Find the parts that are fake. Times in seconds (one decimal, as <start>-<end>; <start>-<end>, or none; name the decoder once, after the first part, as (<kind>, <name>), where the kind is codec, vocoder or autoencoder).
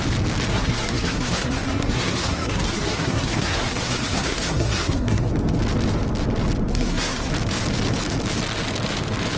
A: 0.5-5.3 (codec, SNAC); 6.7-7.3